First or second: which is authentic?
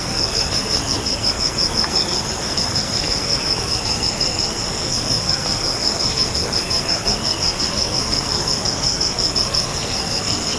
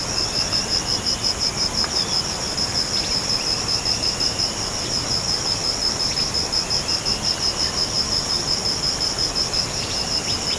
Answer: second